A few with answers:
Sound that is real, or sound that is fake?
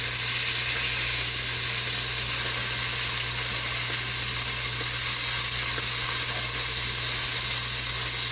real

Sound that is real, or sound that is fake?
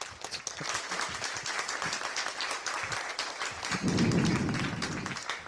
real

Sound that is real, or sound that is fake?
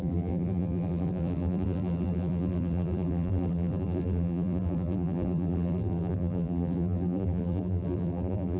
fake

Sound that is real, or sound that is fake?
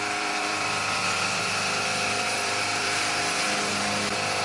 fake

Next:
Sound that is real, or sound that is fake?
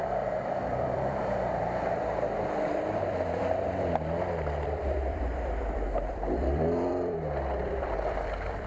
fake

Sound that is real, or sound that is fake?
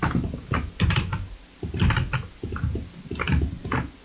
real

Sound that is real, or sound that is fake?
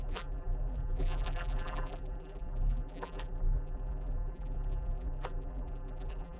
fake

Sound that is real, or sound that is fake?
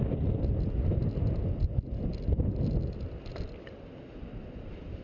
real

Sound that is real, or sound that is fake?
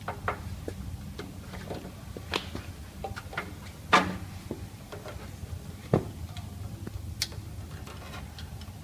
real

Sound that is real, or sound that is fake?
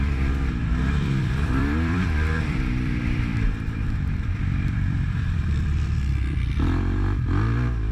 fake